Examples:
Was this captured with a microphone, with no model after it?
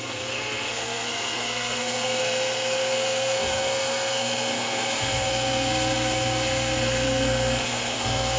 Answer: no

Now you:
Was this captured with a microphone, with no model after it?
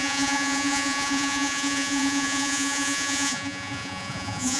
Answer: no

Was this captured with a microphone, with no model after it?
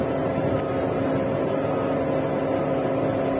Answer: yes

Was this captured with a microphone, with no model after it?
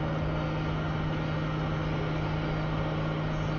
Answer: yes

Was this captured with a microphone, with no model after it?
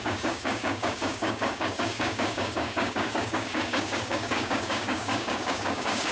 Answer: no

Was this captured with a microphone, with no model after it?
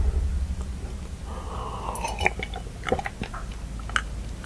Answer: yes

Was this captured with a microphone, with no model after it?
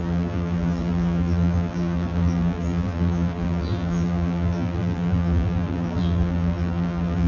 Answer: no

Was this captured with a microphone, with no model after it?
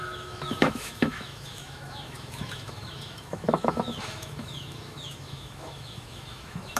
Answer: no